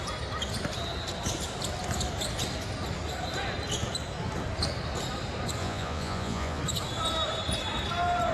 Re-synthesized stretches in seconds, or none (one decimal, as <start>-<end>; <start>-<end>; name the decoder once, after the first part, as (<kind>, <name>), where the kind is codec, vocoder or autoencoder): 5.6-6.6 (vocoder, Vocos)

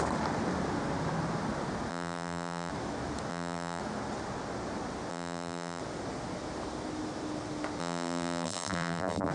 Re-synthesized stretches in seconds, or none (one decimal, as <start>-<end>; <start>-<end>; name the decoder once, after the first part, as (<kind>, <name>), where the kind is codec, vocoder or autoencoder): 1.9-2.7 (vocoder, BigVGAN v2); 3.3-3.8; 5.1-5.8; 7.8-9.3

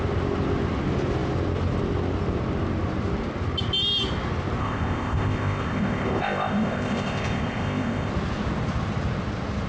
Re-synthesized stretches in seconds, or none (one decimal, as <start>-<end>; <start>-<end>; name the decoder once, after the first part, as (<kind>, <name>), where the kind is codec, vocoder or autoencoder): 4.6-8.1 (codec, ZipCodec)

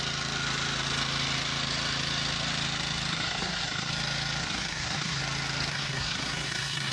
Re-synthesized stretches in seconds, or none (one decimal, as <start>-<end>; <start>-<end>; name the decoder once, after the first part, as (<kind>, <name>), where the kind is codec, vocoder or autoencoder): 3.1-3.9 (codec, SNAC); 4.4-5.2; 5.7-6.9